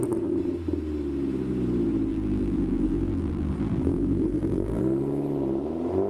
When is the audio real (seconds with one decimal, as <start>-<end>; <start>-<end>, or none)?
0.0-2.1; 4.8-6.1